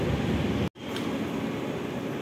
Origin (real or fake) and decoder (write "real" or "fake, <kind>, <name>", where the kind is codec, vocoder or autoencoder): real